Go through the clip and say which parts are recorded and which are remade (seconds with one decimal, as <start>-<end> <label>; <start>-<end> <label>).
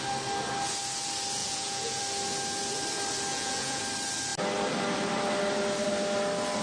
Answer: 0.0-1.4 recorded; 1.4-2.0 remade; 2.0-3.3 recorded; 3.3-3.8 remade; 3.8-6.6 recorded